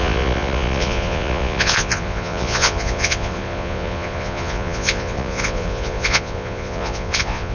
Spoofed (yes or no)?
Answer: yes